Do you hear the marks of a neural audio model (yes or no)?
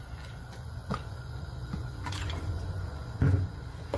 yes